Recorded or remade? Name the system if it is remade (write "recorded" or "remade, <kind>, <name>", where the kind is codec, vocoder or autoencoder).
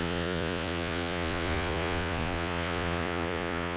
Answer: remade, vocoder, Vocos